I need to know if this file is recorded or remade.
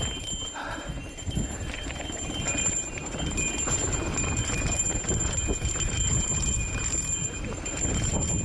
remade